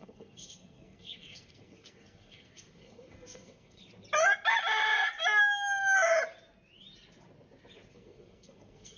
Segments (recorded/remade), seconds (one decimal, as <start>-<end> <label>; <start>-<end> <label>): 0.0-3.8 remade; 3.8-7.9 recorded; 7.9-9.0 remade